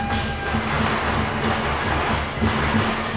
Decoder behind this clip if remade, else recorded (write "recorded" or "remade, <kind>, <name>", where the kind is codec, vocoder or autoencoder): recorded